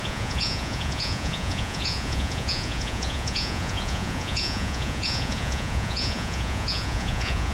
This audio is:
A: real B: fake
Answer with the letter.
B